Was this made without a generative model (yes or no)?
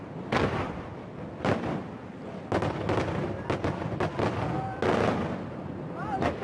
yes